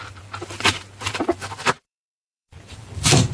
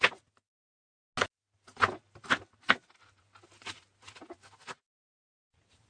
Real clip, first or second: second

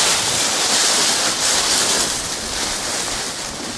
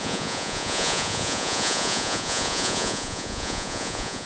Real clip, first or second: first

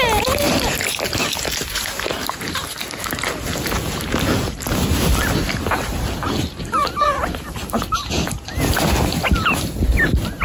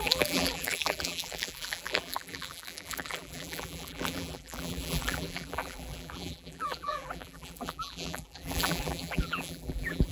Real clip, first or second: first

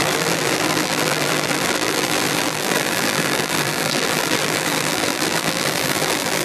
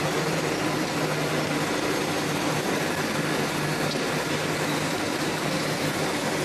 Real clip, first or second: second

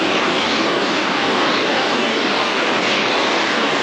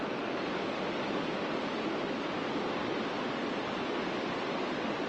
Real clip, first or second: second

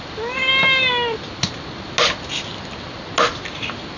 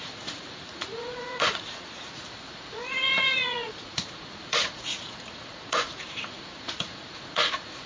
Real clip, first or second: first